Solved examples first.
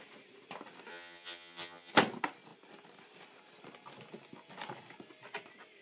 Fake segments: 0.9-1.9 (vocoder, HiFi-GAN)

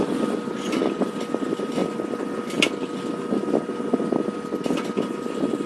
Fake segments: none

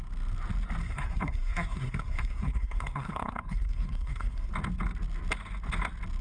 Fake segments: 0.8-4.5 (codec, SNAC)

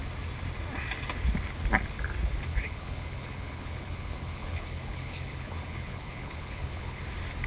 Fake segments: 2.5-7.0 (codec, HILCodec)